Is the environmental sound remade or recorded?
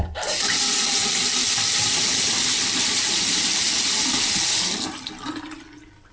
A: recorded